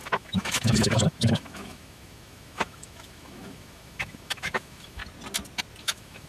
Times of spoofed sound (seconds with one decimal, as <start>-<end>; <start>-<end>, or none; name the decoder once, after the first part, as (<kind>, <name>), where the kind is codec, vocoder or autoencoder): 0.0-5.0 (autoencoder, DAC-VAE); 5.8-6.3